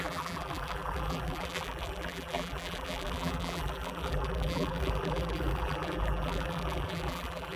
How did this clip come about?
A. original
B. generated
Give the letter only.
B